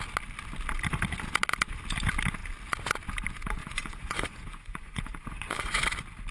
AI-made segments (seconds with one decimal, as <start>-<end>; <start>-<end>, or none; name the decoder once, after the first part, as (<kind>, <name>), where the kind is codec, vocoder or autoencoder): 3.6-5.8 (vocoder, Vocos)